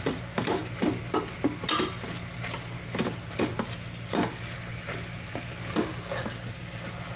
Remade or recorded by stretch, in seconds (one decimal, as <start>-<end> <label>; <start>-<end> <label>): 0.0-7.2 recorded